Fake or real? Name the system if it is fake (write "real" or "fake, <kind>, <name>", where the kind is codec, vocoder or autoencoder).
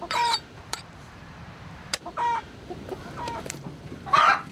fake, vocoder, BigVGAN v2